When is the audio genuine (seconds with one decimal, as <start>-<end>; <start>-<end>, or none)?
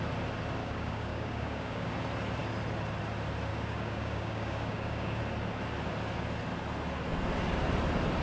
0.0-0.6; 1.9-3.5; 5.2-8.2